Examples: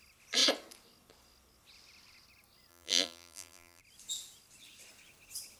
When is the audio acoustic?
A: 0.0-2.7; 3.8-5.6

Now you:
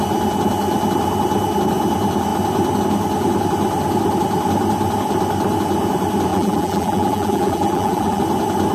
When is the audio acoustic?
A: 0.0-6.3; 8.2-8.7

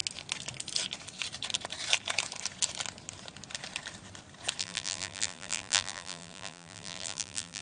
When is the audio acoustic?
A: 0.0-4.6

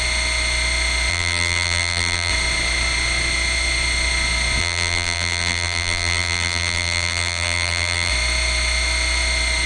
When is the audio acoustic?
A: 0.0-1.1; 2.3-4.6; 8.1-9.7